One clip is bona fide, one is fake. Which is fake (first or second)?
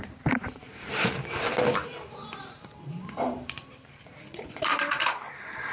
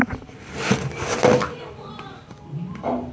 first